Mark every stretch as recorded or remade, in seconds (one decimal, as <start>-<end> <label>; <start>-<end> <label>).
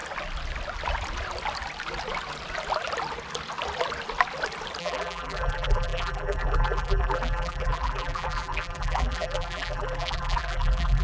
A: 0.0-4.8 recorded; 4.8-11.0 remade